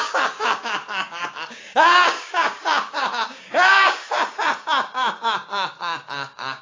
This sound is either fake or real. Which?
fake